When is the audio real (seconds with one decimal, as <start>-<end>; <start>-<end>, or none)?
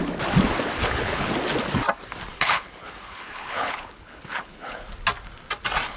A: 0.0-0.8; 1.3-2.3; 4.9-6.0